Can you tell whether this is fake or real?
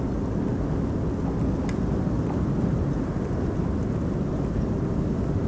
real